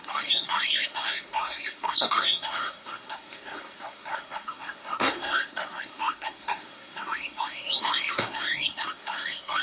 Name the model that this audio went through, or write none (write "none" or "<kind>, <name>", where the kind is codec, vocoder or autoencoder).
codec, SNAC